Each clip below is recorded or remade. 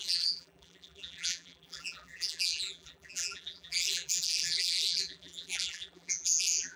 remade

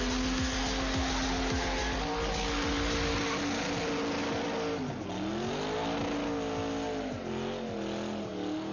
recorded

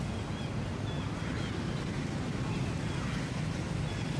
recorded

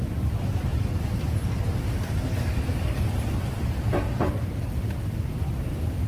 recorded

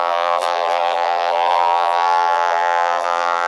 remade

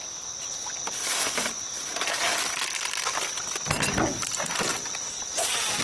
recorded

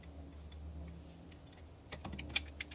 recorded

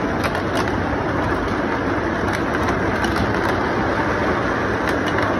recorded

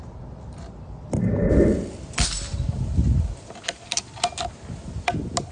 recorded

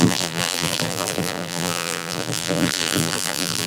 remade